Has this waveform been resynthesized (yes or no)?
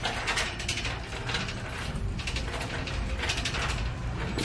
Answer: no